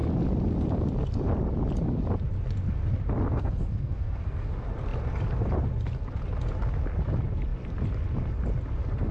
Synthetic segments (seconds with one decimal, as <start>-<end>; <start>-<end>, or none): 3.3-4.5